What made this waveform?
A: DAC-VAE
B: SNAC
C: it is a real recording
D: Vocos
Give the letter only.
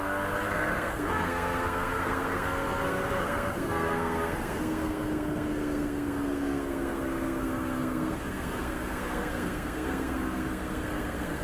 B